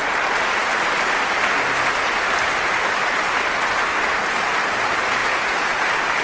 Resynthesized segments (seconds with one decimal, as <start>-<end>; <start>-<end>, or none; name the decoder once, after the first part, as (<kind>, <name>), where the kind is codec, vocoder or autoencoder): 5.2-5.8 (vocoder, Vocos)